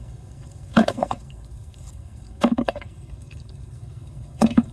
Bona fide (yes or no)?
no